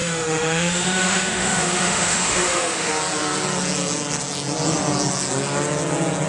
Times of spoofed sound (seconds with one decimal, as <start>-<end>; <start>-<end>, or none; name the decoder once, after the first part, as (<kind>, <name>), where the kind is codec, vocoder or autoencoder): 0.0-2.9 (autoencoder, DAC-VAE)